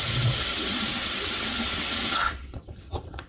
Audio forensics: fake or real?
fake